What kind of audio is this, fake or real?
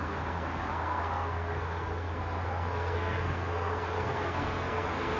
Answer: fake